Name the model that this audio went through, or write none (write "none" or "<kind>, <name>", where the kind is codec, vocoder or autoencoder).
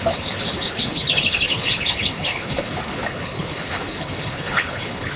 codec, HILCodec